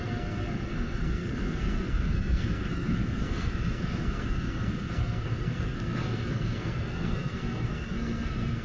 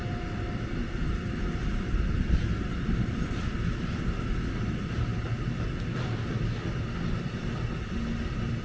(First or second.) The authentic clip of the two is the second